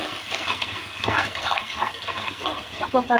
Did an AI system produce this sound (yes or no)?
yes